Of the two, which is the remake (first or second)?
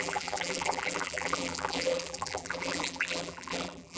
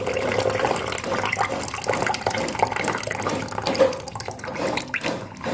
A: first